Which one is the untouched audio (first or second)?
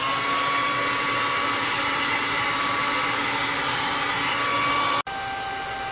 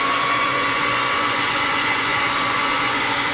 first